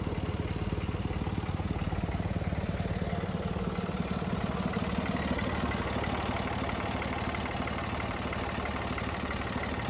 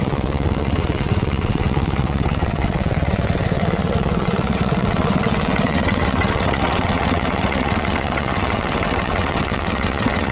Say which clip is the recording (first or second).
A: first